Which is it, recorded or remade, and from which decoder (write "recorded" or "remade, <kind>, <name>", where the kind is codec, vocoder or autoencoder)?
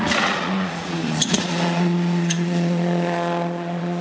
remade, vocoder, Vocos